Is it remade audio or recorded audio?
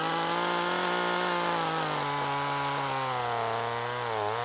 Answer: recorded